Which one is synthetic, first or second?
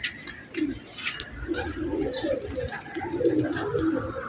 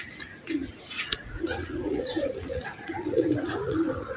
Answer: second